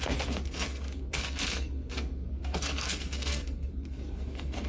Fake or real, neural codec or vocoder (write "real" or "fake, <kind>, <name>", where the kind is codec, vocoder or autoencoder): fake, codec, SNAC